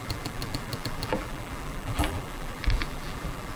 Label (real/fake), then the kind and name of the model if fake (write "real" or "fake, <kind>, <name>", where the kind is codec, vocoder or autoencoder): fake, vocoder, BigVGAN v2